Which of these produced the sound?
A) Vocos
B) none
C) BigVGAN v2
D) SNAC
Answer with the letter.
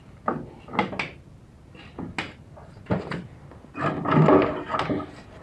B